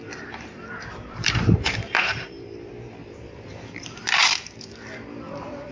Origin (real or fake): fake